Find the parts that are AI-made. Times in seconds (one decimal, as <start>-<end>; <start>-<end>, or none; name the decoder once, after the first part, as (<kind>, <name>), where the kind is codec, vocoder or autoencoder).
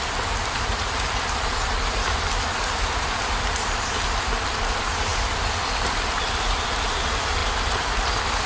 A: 0.0-8.5 (vocoder, BigVGAN v2)